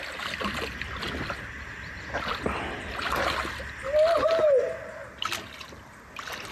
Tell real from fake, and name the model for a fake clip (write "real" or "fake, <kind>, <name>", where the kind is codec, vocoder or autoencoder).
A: real